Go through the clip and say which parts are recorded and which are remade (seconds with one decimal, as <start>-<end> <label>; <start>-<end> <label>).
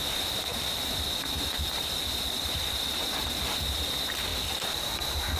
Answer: 0.0-0.5 recorded; 0.5-3.0 remade; 3.0-4.3 recorded; 4.3-5.0 remade; 5.0-5.4 recorded